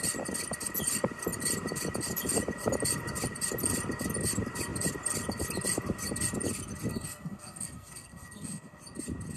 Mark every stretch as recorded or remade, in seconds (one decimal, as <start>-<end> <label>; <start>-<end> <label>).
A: 0.0-6.9 recorded; 6.9-8.8 remade; 8.8-9.4 recorded